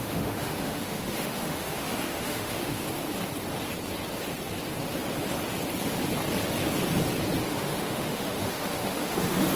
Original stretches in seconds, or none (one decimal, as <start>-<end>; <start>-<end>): 2.8-7.4